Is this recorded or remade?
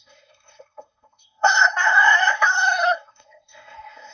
remade